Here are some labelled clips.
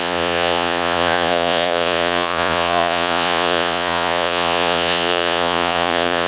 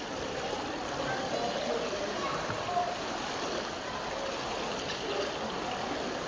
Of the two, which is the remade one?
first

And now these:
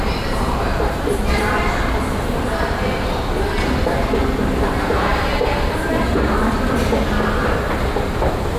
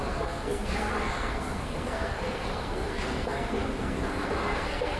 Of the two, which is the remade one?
second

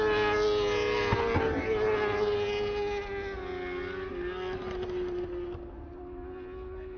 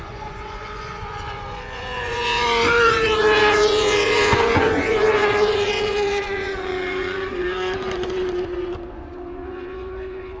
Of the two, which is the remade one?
second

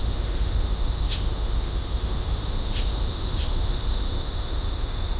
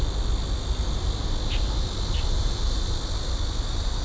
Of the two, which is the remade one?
first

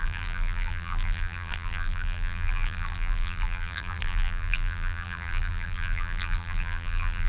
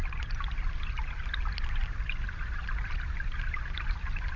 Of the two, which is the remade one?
first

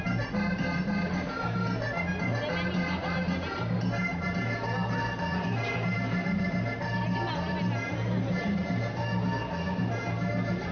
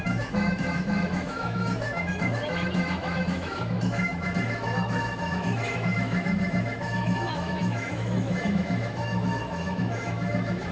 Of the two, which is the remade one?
second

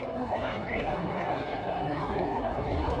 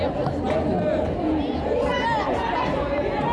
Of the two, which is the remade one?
first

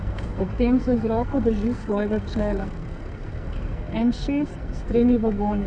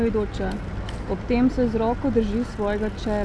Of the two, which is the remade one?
first